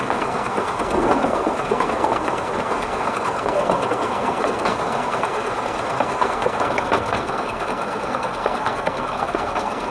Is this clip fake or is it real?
fake